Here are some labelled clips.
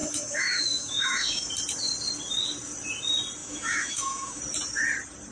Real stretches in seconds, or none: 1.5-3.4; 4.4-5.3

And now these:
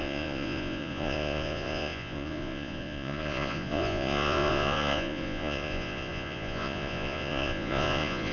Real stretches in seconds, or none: none

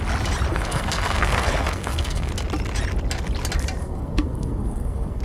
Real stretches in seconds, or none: 0.0-0.5; 2.3-3.8

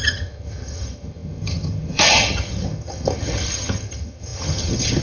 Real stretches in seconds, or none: none